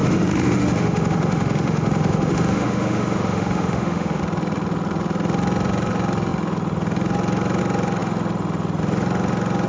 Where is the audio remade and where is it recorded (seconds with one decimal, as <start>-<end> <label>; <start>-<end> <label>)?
0.0-4.2 remade; 4.2-9.7 recorded